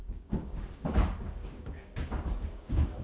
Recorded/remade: remade